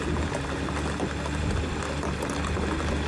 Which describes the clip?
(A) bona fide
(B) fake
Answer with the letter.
A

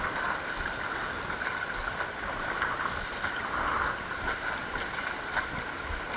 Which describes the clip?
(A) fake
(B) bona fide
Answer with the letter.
B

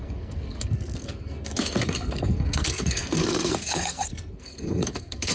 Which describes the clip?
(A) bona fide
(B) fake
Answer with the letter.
B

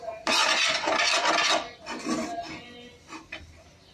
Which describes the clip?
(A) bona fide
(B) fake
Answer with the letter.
A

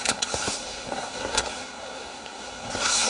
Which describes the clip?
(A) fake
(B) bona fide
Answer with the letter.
A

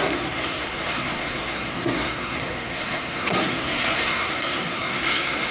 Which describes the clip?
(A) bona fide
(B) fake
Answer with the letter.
B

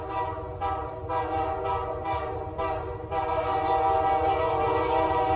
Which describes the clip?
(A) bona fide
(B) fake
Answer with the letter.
A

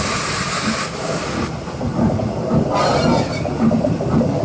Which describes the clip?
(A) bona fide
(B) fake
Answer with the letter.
A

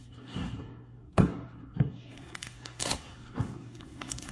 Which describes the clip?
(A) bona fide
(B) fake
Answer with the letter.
B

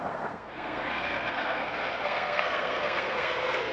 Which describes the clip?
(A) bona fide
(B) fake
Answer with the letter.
B